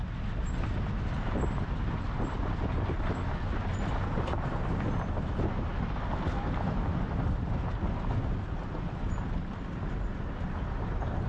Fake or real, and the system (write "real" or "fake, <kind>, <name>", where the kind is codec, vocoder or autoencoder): real